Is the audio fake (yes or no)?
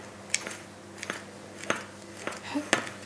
no